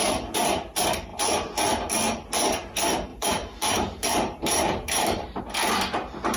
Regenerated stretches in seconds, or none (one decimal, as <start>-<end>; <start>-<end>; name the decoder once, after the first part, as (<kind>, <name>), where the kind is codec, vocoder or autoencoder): 3.1-5.4 (vocoder, BigVGAN v2)